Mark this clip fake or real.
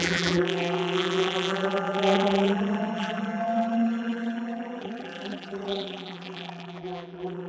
fake